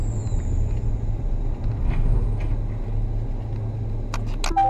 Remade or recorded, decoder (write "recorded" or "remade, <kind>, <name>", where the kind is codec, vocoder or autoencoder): recorded